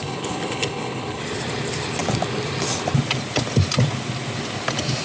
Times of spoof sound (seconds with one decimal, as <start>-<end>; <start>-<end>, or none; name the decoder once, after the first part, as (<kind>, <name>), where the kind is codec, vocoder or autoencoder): 0.0-1.2 (codec, HILCodec)